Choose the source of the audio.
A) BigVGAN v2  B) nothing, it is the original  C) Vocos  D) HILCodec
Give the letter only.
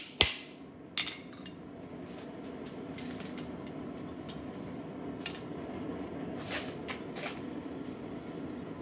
B